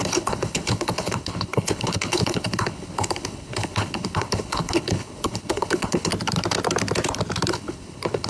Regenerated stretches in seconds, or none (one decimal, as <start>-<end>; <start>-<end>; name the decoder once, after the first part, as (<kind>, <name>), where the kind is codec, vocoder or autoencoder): 0.0-6.1 (codec, HILCodec); 7.5-8.3